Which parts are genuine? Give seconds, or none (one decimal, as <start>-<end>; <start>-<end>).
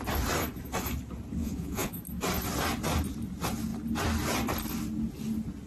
0.0-1.4; 2.0-5.7